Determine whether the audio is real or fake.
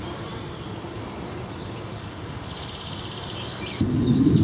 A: fake